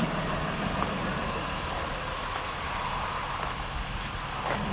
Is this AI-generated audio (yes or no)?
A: no